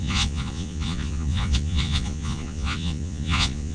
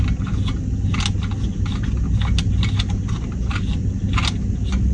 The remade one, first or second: first